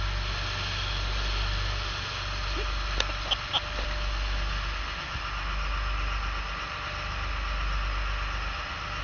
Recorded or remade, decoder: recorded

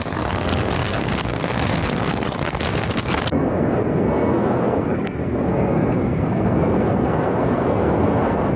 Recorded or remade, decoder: remade, codec, SNAC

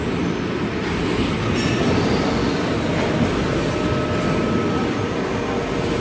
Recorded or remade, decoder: recorded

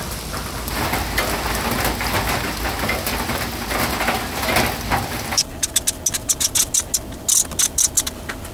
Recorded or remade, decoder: recorded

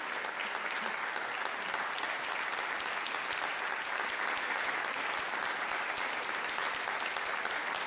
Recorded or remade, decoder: recorded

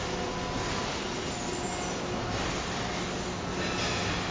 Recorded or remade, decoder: recorded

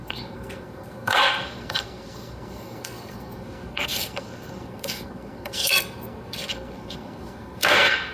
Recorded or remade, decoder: remade, codec, SNAC